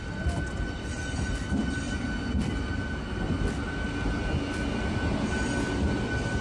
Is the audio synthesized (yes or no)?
no